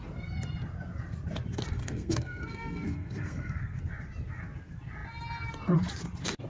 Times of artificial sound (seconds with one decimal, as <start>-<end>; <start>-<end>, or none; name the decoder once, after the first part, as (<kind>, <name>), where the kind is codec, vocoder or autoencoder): 1.8-3.8 (codec, SNAC)